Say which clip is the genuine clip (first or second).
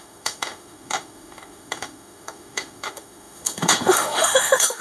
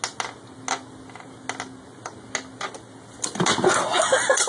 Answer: second